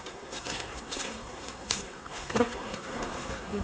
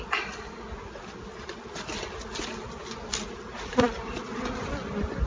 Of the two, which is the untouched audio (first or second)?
second